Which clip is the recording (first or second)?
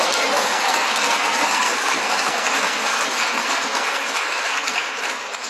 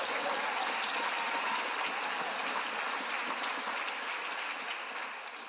second